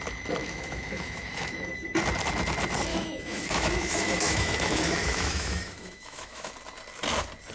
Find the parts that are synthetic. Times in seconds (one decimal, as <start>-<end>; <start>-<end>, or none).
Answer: 0.4-1.7; 2.9-6.5